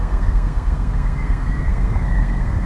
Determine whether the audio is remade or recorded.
remade